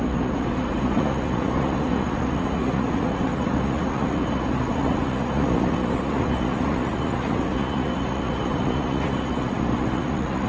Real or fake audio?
fake